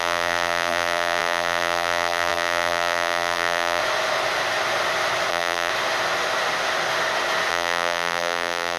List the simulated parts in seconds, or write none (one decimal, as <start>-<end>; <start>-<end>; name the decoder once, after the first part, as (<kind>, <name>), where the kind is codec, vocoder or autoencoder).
0.0-3.8 (vocoder, BigVGAN v2); 5.3-5.7; 7.5-8.8